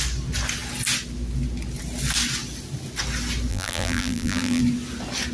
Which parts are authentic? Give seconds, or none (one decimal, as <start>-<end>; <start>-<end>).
0.0-3.5; 4.6-5.3